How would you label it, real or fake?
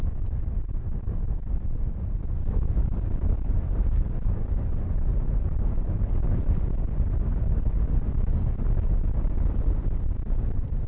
real